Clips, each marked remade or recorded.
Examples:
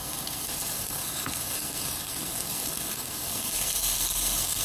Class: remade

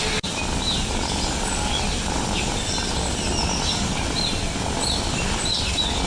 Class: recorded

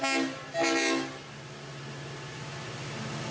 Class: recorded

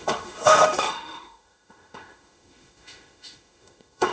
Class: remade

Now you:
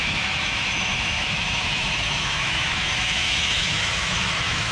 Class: remade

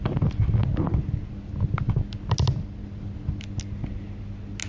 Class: recorded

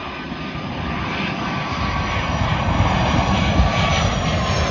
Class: recorded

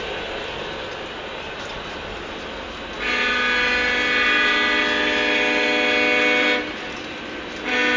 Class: recorded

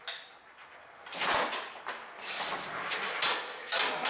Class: recorded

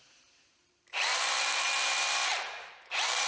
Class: remade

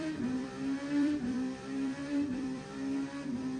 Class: remade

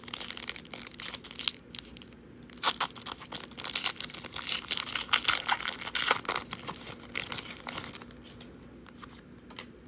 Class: recorded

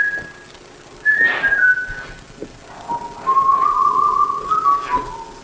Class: recorded